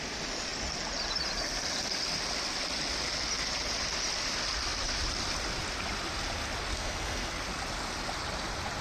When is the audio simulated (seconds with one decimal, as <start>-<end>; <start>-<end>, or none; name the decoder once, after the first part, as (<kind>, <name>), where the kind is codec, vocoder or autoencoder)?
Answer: 6.7-7.3 (codec, SNAC)